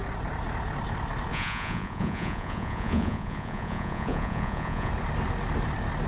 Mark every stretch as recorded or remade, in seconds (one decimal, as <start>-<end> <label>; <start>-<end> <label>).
0.0-1.3 recorded; 1.3-4.9 remade; 4.9-6.1 recorded